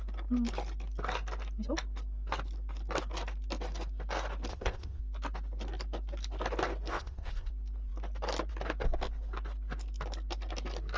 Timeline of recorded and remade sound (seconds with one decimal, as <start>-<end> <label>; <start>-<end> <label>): 0.0-4.5 recorded; 4.5-5.0 remade; 5.0-6.9 recorded; 6.9-7.5 remade; 7.5-11.0 recorded